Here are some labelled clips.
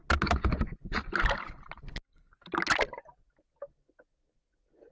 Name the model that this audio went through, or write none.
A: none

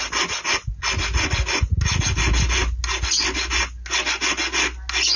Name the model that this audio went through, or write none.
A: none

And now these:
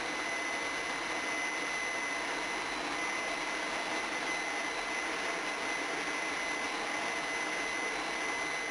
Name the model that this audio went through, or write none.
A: none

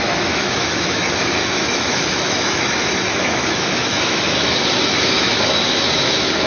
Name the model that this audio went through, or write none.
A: autoencoder, DAC-VAE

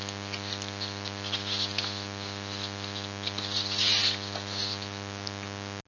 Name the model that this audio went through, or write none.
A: none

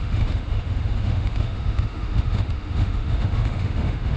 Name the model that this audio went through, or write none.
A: autoencoder, DAC-VAE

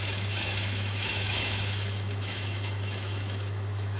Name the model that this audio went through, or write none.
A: autoencoder, DAC-VAE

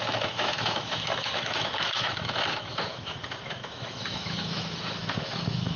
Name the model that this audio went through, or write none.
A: autoencoder, DAC-VAE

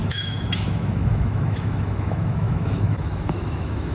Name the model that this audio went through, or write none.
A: autoencoder, DAC-VAE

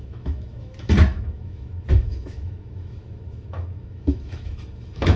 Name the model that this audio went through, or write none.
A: autoencoder, DAC-VAE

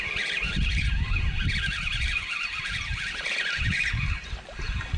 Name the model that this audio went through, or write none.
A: none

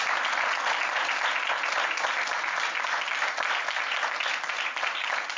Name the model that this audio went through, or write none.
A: none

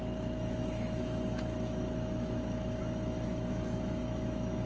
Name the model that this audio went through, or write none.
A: autoencoder, DAC-VAE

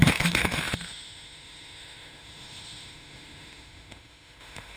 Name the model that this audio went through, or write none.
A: autoencoder, DAC-VAE